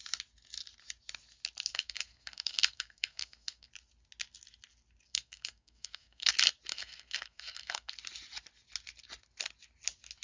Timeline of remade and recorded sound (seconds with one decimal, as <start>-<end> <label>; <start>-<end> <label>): 0.0-1.7 recorded; 1.7-3.7 remade; 3.7-5.1 recorded; 5.1-6.3 remade; 6.3-6.7 recorded; 6.7-7.9 remade; 7.9-10.2 recorded